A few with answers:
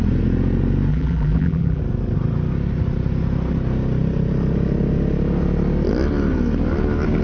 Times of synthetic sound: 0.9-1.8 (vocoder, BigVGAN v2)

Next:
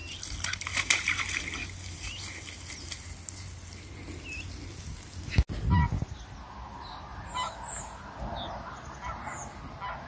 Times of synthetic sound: none

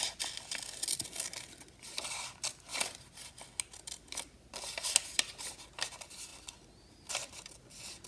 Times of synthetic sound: 2.7-3.3 (vocoder, BigVGAN v2)

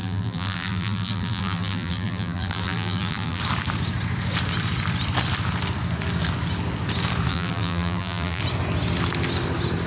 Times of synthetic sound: 0.0-3.4 (vocoder, BigVGAN v2); 7.3-8.4

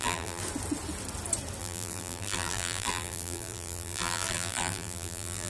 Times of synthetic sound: 0.0-0.4 (vocoder, BigVGAN v2); 1.6-5.5

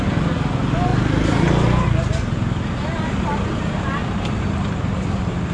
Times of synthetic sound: none

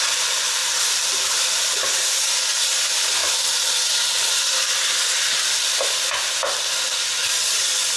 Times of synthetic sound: 0.6-1.6 (vocoder, BigVGAN v2); 3.2-8.0